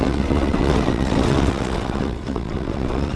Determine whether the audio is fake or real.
fake